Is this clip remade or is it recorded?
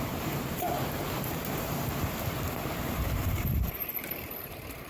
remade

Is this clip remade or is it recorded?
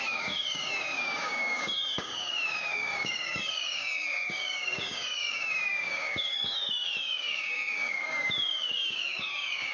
remade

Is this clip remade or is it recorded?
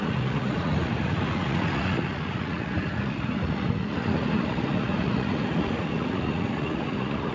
remade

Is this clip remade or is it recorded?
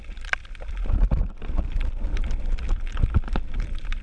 remade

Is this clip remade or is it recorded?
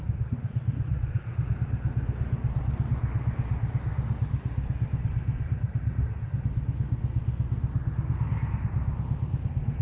recorded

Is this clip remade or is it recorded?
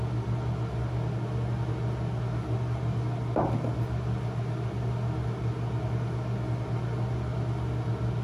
recorded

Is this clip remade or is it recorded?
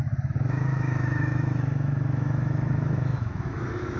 remade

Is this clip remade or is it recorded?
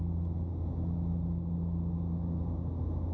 recorded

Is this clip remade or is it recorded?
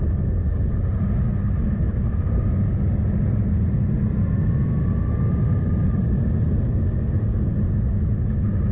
recorded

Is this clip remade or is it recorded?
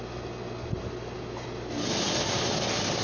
recorded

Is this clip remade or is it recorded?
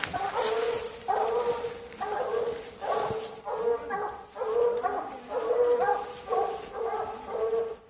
recorded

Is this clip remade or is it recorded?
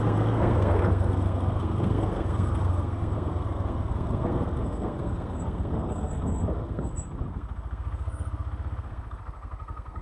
remade